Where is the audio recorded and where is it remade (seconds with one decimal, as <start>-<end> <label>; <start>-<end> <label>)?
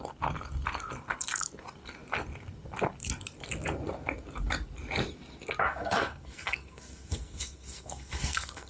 0.0-5.6 recorded; 5.6-8.7 remade